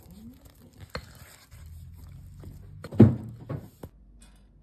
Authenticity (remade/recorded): recorded